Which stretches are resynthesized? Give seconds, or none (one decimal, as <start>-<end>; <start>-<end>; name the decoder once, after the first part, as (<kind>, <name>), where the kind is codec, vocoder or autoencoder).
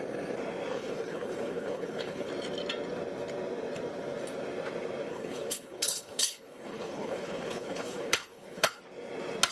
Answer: 0.7-2.3 (codec, HILCodec); 5.1-8.8